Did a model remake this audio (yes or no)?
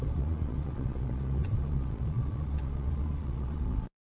yes